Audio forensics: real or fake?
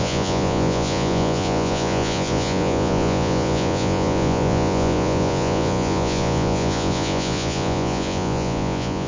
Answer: fake